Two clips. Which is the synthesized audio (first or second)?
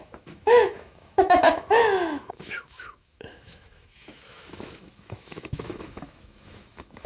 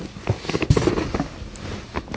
first